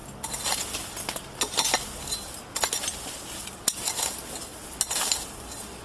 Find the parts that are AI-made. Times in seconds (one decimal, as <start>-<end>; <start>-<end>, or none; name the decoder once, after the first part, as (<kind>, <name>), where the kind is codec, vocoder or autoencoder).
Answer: none